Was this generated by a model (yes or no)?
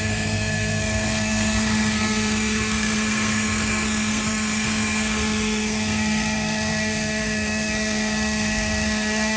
yes